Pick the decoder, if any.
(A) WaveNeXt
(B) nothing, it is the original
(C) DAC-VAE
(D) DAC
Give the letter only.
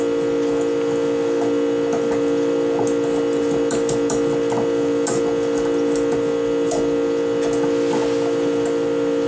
B